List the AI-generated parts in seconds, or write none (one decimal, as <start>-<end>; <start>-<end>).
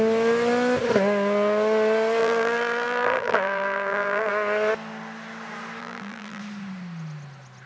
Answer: 2.2-4.3; 5.8-6.4